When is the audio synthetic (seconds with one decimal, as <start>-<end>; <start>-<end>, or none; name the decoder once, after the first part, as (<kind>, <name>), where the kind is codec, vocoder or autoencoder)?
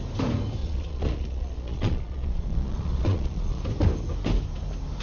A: 0.6-3.6 (vocoder, Vocos)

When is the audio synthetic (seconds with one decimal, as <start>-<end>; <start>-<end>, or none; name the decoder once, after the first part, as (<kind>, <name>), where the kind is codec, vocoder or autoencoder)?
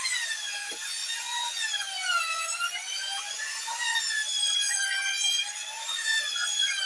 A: 0.0-6.9 (vocoder, Vocos)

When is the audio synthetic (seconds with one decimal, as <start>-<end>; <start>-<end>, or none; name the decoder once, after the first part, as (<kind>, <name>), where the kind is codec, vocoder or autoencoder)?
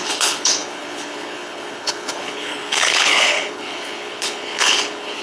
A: 0.0-5.2 (codec, HILCodec)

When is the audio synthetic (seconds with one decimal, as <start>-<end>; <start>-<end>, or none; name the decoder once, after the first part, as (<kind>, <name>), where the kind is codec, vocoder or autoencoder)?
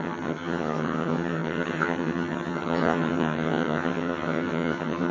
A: 0.0-5.1 (vocoder, HiFi-GAN)